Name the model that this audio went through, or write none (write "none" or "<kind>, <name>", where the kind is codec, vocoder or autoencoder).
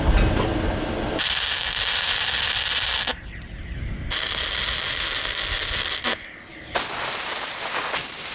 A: none